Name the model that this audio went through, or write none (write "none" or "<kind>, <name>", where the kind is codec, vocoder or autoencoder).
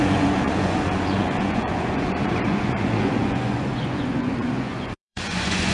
vocoder, Vocos